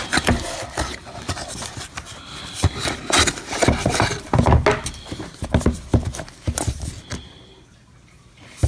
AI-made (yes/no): no